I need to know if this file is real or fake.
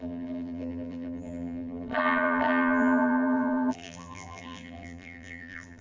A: fake